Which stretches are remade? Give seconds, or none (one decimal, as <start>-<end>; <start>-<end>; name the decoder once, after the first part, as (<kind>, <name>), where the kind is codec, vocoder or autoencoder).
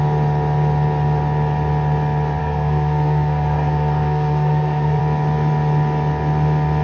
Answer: 2.4-5.0 (codec, SNAC)